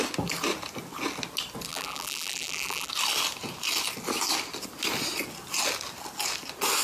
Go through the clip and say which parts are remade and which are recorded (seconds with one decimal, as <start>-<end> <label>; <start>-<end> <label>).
0.0-1.7 recorded; 1.7-2.9 remade; 2.9-6.8 recorded